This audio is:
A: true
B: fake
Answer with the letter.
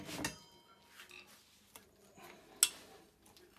A